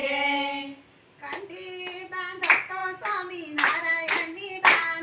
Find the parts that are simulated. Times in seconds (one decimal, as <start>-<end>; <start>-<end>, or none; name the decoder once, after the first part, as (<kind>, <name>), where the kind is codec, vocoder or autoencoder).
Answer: none